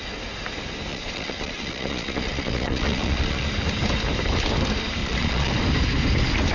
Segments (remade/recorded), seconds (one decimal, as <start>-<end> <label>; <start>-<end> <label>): 0.0-0.9 recorded; 0.9-3.5 remade; 3.5-5.0 recorded; 5.0-5.5 remade; 5.5-6.5 recorded